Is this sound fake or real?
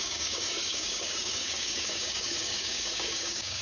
fake